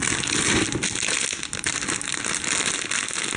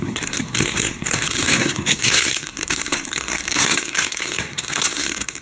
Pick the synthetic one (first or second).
second